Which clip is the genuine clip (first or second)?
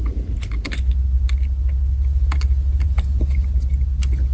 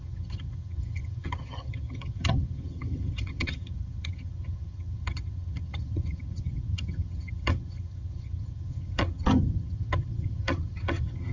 first